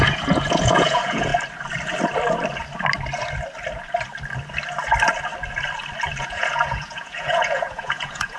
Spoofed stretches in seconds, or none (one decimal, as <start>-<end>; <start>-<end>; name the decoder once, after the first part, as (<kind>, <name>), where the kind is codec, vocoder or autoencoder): 0.0-1.3 (vocoder, Vocos); 6.2-8.4